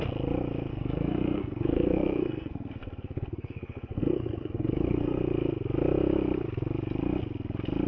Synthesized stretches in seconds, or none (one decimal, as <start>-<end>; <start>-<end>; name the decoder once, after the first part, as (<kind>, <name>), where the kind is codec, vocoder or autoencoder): 0.7-5.2 (codec, SNAC)